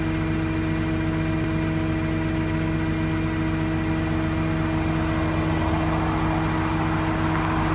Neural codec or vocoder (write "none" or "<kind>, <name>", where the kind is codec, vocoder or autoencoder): none